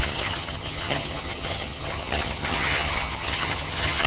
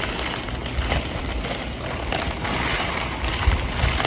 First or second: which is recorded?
second